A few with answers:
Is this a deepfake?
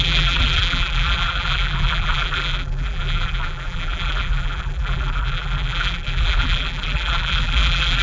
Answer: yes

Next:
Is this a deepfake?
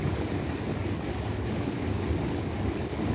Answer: yes